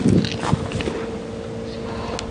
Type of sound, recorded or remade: recorded